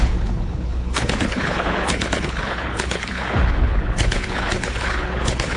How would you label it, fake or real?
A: fake